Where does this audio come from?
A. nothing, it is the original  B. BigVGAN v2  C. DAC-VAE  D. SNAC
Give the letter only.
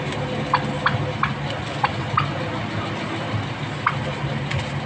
A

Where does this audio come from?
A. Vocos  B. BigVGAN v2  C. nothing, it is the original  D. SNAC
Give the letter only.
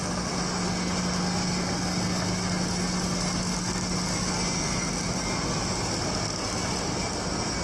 C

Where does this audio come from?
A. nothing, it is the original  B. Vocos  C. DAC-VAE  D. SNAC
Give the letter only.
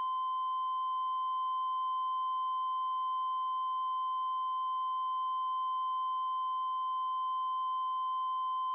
A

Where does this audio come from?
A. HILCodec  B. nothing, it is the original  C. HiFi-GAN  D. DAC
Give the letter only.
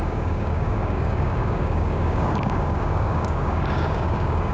D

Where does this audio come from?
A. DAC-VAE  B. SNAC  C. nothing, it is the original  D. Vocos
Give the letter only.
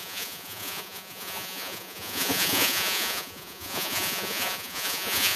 D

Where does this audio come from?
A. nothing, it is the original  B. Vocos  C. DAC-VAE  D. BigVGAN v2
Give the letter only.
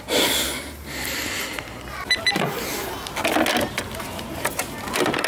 A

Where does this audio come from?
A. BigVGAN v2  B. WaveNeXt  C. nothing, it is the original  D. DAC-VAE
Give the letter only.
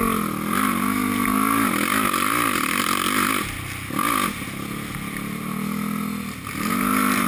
C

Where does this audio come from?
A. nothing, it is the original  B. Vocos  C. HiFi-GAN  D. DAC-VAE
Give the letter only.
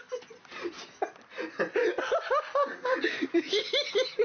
A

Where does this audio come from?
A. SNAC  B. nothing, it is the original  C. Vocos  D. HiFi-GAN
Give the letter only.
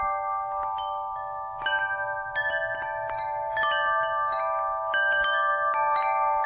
B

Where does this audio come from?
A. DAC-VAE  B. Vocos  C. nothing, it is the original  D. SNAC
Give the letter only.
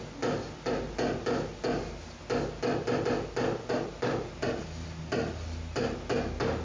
C